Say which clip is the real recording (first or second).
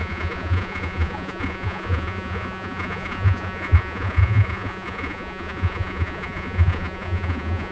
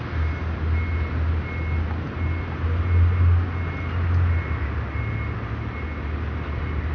second